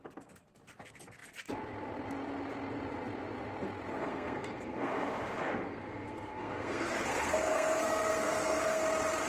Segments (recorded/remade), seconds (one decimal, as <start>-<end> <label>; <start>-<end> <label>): 0.0-4.0 recorded; 4.0-8.8 remade; 8.8-9.3 recorded